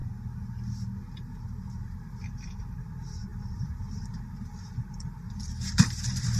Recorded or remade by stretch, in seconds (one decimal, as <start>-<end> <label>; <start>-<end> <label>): 0.0-1.1 recorded; 1.1-6.4 remade